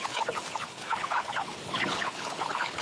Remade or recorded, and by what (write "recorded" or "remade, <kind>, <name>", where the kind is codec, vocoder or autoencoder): remade, codec, HILCodec